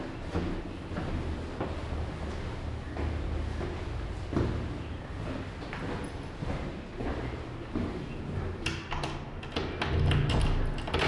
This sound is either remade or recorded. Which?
recorded